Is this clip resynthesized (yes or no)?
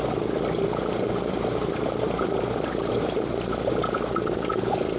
no